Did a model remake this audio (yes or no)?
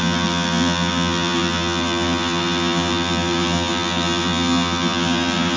yes